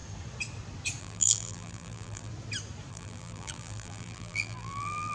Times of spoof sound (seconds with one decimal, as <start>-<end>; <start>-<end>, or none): 1.0-2.3; 2.9-5.1